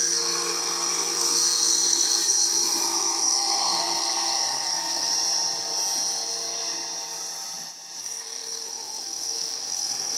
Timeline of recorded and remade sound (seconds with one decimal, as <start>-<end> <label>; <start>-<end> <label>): 0.0-5.1 remade; 5.1-8.0 recorded; 8.0-10.2 remade